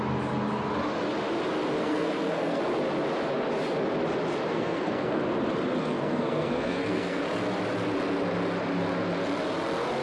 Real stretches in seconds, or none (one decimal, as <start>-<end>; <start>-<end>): 0.0-1.8; 2.6-4.5; 5.2-5.8; 7.2-10.0